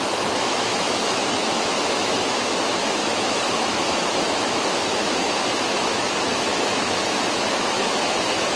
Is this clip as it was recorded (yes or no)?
no